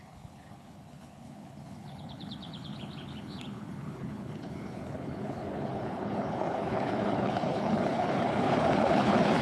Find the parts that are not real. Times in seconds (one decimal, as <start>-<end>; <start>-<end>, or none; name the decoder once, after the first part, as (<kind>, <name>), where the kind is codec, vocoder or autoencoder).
0.0-9.4 (codec, HILCodec)